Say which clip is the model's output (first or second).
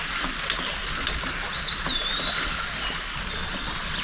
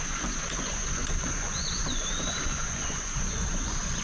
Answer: second